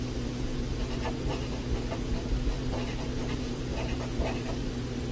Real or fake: fake